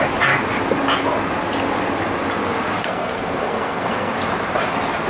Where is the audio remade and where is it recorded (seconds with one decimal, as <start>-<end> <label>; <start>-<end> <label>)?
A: 0.0-2.8 recorded; 2.8-4.1 remade; 4.1-5.1 recorded